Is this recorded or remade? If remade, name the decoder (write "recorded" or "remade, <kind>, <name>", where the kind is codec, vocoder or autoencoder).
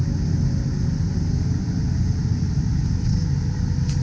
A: recorded